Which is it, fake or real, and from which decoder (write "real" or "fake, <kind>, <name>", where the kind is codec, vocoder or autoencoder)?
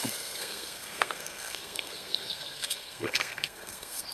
fake, codec, SNAC